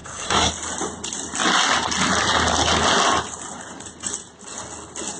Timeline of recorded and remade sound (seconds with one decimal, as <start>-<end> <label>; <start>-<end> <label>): 0.0-0.5 remade; 0.5-5.2 recorded

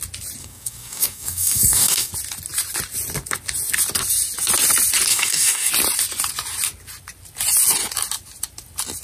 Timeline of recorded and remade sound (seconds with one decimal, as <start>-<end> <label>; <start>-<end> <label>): 0.0-0.4 recorded; 0.4-2.1 remade; 2.1-5.1 recorded; 5.1-5.7 remade; 5.7-9.0 recorded